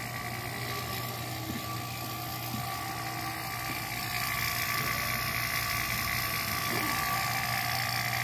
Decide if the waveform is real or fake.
real